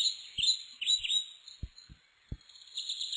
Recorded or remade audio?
recorded